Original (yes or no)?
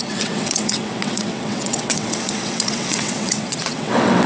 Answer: no